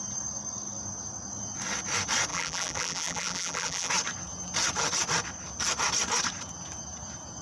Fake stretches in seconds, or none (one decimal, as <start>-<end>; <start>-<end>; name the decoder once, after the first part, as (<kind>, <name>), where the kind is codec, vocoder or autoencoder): 2.3-3.9 (vocoder, BigVGAN v2)